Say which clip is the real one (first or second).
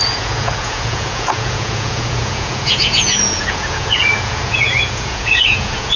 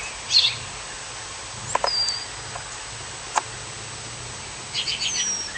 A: second